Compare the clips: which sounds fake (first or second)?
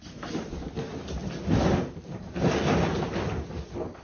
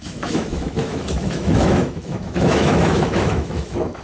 second